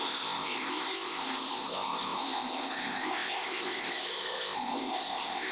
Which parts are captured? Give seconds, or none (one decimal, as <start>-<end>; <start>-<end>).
none